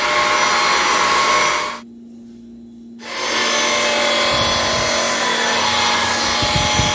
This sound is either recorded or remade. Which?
recorded